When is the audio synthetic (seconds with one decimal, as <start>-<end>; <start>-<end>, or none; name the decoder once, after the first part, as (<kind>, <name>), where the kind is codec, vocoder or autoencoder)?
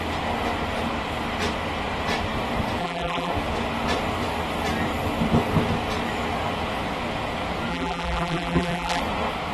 2.8-3.3 (vocoder, BigVGAN v2); 7.7-9.0